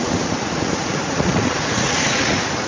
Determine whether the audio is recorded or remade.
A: remade